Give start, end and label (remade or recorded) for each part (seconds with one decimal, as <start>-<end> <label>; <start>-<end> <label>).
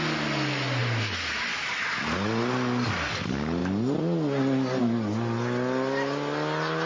0.0-6.9 recorded